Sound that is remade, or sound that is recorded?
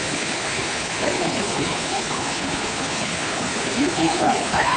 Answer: remade